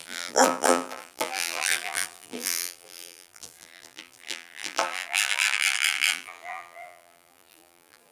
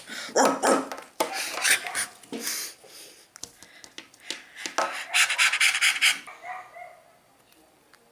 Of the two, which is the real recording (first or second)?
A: second